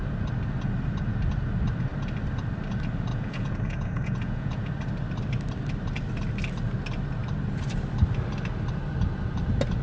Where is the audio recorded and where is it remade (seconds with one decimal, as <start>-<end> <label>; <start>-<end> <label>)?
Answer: 0.0-3.1 recorded; 3.1-4.7 remade; 4.7-9.8 recorded